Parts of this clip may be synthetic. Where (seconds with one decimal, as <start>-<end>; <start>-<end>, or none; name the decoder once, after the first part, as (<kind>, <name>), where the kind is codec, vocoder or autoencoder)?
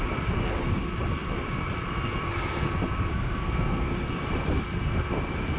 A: 3.1-3.9 (codec, SNAC)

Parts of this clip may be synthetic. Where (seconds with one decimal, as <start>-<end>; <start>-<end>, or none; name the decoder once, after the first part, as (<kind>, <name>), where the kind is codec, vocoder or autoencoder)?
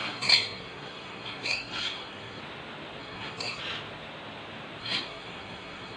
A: 0.0-2.4 (codec, SNAC); 3.0-3.6; 4.8-6.0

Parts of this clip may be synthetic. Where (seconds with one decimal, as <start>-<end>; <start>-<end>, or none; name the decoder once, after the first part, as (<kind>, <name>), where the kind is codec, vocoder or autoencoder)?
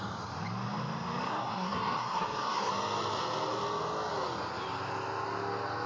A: 1.3-2.7 (codec, SNAC)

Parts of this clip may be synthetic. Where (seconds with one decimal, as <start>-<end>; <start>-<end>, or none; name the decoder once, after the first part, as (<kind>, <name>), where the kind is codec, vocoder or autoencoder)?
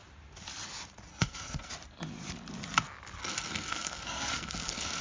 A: 1.1-1.7 (codec, SNAC); 3.2-5.0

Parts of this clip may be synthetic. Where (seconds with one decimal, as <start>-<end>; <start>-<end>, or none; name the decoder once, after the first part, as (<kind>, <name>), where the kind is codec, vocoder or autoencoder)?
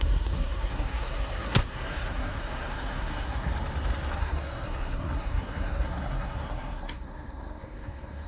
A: 0.0-3.5 (codec, SNAC); 4.2-8.3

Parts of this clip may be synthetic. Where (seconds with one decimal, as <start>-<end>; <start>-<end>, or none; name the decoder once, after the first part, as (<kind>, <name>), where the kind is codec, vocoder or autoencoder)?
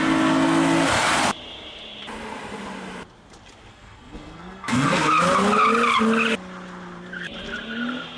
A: 3.7-5.1 (codec, SNAC)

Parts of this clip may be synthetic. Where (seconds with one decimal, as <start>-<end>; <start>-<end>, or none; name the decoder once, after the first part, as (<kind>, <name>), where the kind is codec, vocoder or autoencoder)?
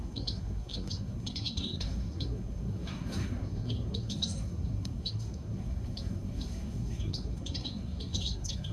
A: 0.0-8.7 (codec, SNAC)